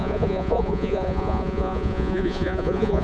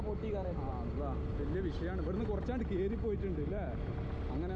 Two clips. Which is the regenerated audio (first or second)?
first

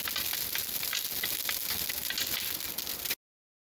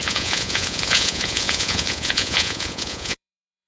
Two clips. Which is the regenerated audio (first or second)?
second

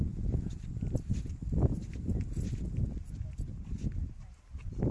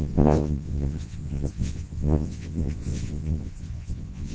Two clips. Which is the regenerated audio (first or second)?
second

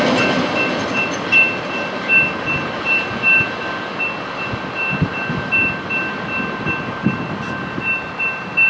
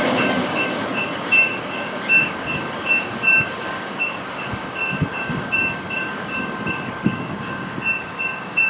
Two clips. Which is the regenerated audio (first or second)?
second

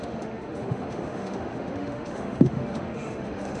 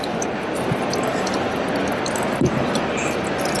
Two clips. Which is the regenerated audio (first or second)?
first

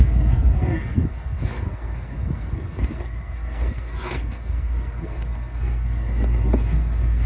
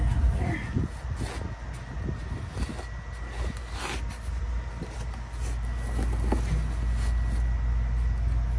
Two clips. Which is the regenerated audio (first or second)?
first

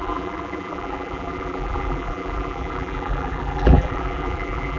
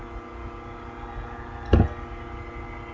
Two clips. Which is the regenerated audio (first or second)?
first